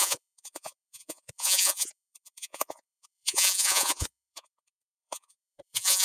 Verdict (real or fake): fake